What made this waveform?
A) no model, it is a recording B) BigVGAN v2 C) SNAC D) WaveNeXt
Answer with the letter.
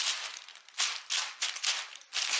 A